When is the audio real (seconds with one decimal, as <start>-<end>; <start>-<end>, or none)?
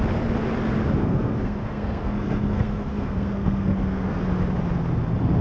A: 0.0-1.0; 4.2-5.4